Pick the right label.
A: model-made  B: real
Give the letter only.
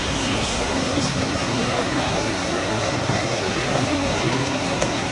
A